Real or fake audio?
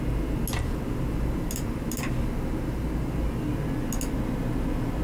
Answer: real